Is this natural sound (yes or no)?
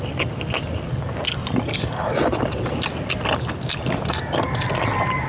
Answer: yes